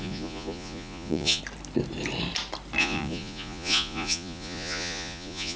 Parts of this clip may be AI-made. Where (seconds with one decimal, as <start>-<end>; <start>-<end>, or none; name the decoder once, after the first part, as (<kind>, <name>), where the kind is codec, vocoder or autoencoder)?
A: 0.0-1.4 (vocoder, Vocos); 2.8-5.6